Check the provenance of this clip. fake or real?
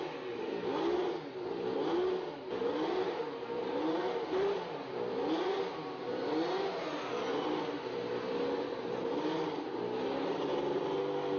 real